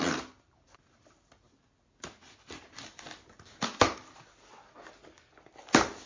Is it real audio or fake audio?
real